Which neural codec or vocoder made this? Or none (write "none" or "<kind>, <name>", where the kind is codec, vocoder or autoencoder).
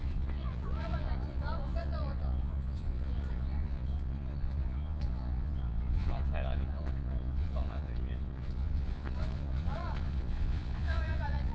vocoder, Vocos